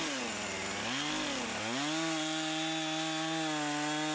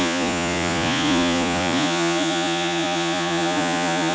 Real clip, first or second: first